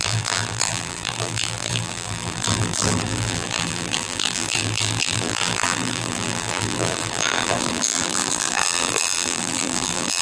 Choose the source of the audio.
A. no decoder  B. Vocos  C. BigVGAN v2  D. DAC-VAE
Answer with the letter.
C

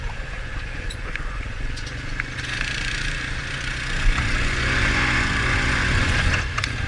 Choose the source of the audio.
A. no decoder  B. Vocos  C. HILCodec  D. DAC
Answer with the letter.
B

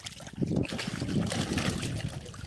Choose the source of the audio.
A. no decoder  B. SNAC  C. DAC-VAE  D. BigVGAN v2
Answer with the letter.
A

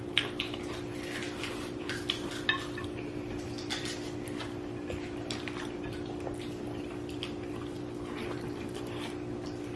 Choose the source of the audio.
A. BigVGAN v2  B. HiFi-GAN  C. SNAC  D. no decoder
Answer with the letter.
A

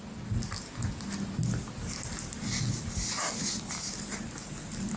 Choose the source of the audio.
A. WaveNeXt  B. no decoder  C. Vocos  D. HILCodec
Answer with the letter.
B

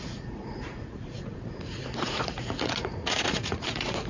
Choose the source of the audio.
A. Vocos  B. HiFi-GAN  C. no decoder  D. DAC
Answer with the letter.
A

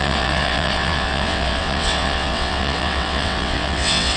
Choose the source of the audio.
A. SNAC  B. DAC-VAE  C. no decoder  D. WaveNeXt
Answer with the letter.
D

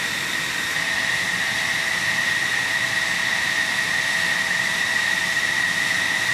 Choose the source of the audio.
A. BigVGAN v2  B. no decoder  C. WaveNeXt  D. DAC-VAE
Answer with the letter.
B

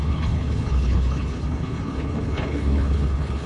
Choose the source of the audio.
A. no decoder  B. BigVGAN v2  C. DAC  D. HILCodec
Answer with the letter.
D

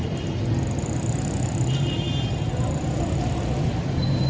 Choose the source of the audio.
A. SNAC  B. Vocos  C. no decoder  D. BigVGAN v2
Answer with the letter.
C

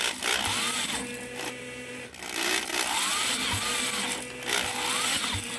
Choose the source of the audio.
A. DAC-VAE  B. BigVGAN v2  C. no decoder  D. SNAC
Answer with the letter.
C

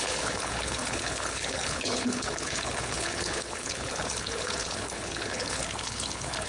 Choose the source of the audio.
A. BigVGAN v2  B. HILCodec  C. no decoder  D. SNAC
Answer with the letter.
B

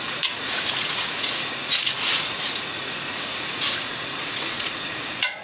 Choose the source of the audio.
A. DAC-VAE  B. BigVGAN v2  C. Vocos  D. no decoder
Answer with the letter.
C